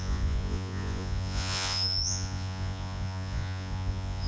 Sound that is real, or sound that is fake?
fake